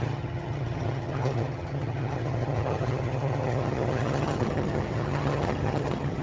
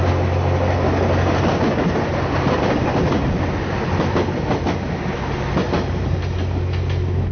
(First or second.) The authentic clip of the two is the second